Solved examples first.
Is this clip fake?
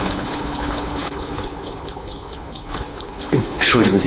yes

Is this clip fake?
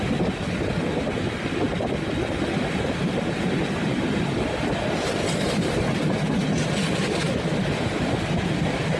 no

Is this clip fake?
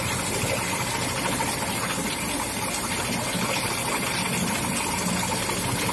no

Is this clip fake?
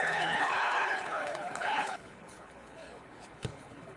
yes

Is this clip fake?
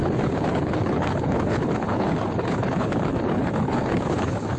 yes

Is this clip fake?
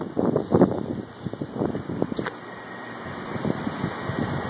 no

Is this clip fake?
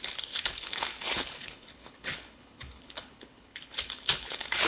yes